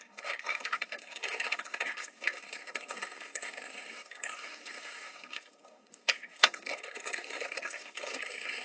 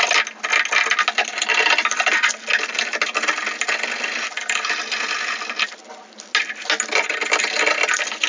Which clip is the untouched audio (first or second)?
second